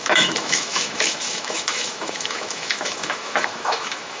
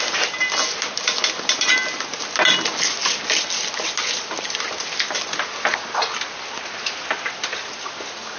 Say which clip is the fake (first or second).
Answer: first